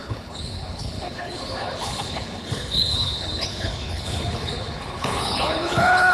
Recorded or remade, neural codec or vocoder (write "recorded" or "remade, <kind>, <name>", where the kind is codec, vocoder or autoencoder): remade, codec, HILCodec